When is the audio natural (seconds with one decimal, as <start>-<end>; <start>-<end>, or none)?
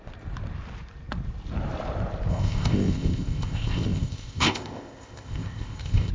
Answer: 0.0-2.3